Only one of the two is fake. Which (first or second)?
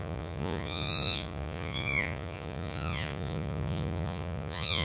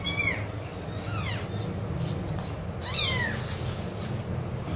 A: first